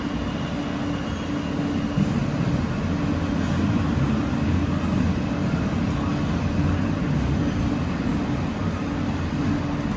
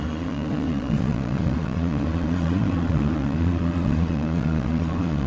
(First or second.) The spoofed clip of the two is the second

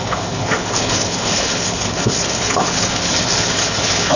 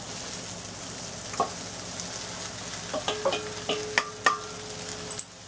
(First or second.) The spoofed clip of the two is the first